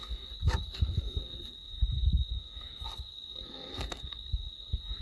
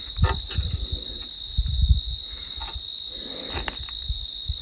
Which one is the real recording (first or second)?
second